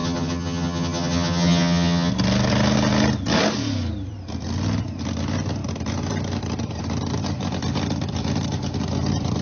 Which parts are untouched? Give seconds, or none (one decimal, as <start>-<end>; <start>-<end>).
2.1-9.4